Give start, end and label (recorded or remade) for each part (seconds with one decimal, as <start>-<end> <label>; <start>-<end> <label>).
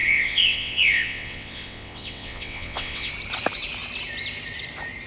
0.0-3.1 remade; 3.1-5.1 recorded